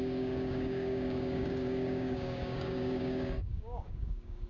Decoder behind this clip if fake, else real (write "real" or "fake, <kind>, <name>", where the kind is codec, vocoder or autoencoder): fake, codec, DAC